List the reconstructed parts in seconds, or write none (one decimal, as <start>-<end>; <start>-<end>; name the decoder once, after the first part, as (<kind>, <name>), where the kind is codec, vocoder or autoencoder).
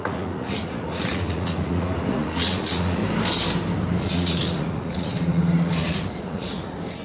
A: 0.0-3.0 (vocoder, Vocos); 4.0-7.0